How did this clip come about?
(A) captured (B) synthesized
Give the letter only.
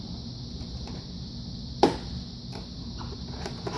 A